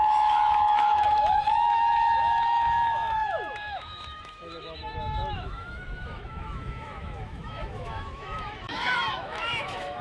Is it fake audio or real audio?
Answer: fake